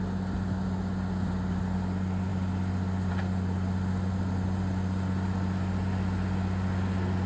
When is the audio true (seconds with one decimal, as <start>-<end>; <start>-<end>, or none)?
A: 0.0-7.3